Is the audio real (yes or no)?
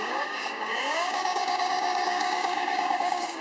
no